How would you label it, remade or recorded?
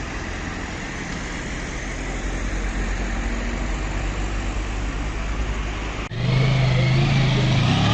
recorded